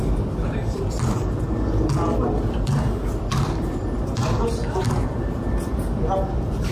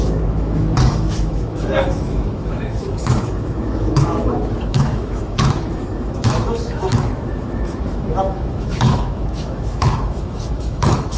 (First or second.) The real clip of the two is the first